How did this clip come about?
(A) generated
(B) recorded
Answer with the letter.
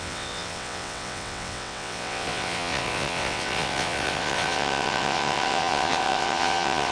A